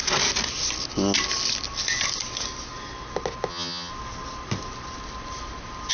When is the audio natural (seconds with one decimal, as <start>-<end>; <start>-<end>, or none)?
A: 0.0-3.5; 3.9-5.9